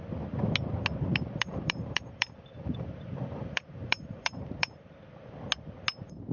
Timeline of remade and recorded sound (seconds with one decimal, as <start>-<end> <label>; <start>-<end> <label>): 0.0-1.1 recorded; 1.1-4.9 remade; 4.9-6.3 recorded